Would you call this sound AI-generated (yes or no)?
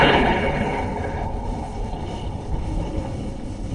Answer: yes